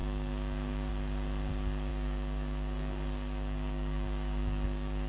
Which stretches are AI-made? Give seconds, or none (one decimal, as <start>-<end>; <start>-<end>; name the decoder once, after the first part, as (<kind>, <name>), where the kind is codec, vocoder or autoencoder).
0.0-0.9 (codec, DAC); 1.9-5.1